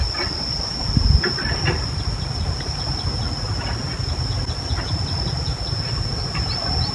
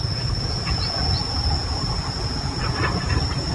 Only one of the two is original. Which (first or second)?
first